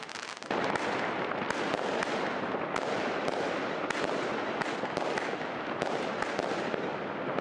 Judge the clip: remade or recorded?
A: recorded